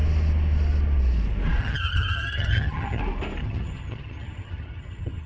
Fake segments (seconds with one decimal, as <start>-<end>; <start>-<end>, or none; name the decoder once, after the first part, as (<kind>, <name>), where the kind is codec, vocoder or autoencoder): 1.6-3.0 (vocoder, HiFi-GAN); 3.4-5.3